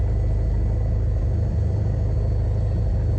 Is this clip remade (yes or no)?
no